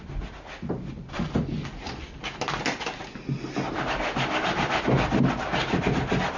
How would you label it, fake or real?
real